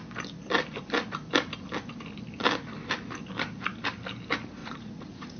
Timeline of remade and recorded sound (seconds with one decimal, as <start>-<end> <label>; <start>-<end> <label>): 0.0-4.6 recorded; 4.6-5.4 remade